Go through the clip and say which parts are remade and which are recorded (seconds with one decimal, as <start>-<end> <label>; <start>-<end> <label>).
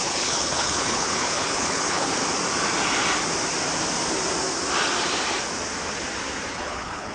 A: 0.0-2.2 remade; 2.2-6.5 recorded; 6.5-7.1 remade